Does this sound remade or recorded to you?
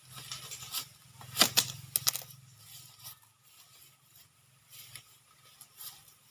recorded